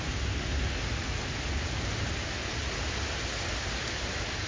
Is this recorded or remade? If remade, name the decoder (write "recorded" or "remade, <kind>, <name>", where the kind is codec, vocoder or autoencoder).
recorded